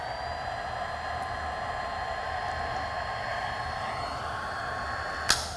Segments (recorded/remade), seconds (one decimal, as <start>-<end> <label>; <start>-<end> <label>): 0.0-3.3 recorded; 3.3-4.6 remade; 4.6-5.6 recorded